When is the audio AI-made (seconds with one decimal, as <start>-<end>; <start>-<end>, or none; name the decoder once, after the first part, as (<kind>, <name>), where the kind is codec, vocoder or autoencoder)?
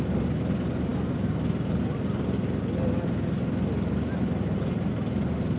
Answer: none